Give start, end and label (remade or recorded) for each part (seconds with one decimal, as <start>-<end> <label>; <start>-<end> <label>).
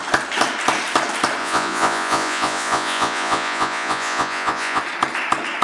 0.0-1.4 recorded; 1.4-4.8 remade; 4.8-5.6 recorded